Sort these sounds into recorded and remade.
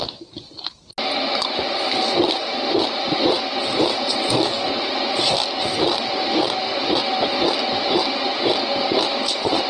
recorded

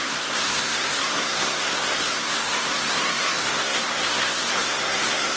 remade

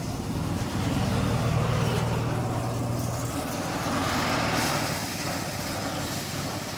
recorded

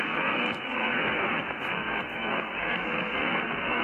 remade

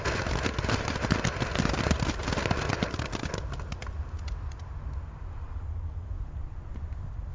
recorded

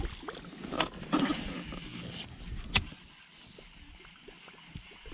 recorded